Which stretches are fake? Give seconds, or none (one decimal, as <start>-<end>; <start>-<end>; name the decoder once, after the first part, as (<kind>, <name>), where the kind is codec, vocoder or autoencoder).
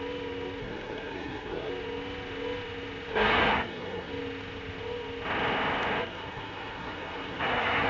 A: 0.6-1.7 (codec, SNAC); 3.1-4.1; 6.0-7.9